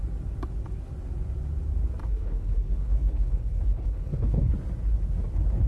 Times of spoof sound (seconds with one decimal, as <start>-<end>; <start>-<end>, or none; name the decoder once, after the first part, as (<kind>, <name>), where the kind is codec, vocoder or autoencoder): 2.0-4.5 (codec, HILCodec)